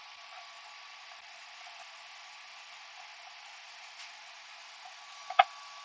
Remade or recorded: recorded